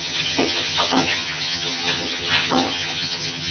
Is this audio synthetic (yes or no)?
yes